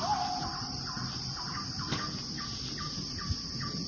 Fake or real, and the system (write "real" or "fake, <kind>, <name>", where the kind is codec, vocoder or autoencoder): real